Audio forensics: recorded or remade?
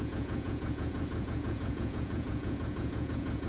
remade